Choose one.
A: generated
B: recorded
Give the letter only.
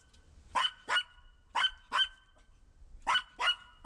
B